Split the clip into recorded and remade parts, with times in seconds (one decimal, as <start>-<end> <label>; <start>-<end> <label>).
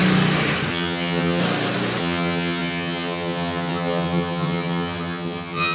0.0-0.7 recorded; 0.7-1.4 remade; 1.4-2.0 recorded; 2.0-5.7 remade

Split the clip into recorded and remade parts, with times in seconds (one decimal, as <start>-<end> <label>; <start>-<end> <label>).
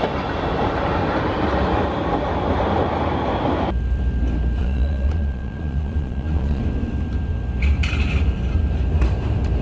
0.0-4.6 recorded; 4.6-6.6 remade; 6.6-9.6 recorded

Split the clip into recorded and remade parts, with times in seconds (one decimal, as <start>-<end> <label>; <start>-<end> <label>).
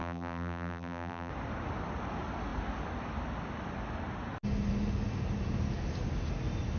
0.0-1.3 remade; 1.3-6.8 recorded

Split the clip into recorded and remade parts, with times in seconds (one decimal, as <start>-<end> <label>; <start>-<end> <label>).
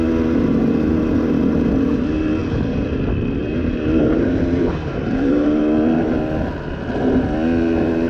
0.0-2.4 recorded; 2.4-2.9 remade; 2.9-3.4 recorded; 3.4-5.6 remade; 5.6-8.1 recorded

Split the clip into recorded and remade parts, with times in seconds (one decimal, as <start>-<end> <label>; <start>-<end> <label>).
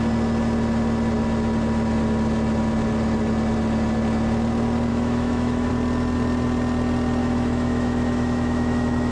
0.0-4.9 recorded; 4.9-5.7 remade; 5.7-7.2 recorded; 7.2-9.1 remade